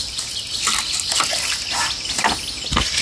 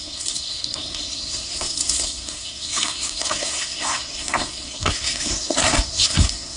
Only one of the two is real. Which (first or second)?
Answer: first